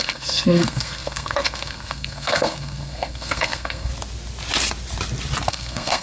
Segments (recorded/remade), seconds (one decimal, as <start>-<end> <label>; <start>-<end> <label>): 0.0-3.9 remade; 3.9-5.5 recorded; 5.5-6.0 remade